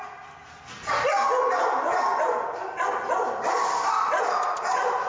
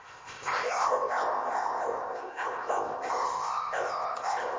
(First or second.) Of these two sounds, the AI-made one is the second